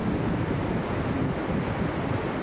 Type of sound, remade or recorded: recorded